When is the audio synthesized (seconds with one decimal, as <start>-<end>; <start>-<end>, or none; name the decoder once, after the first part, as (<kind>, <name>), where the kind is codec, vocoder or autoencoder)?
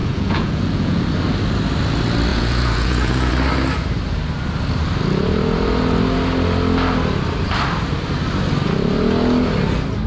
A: 0.0-1.0 (vocoder, Vocos); 2.3-3.3